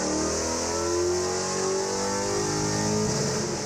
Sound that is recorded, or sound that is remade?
recorded